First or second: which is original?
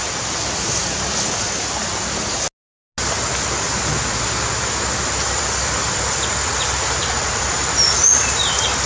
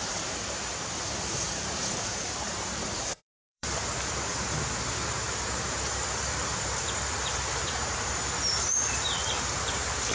first